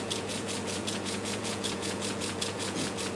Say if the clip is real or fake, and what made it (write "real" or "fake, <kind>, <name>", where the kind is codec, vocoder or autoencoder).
fake, vocoder, Vocos